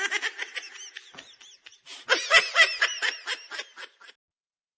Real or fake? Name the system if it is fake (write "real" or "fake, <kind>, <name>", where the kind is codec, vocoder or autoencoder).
real